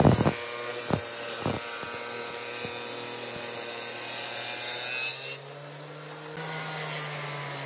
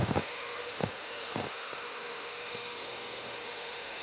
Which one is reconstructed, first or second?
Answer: second